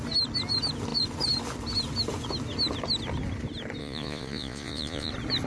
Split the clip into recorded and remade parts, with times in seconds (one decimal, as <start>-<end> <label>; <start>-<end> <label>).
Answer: 0.0-3.8 recorded; 3.8-5.1 remade; 5.1-5.5 recorded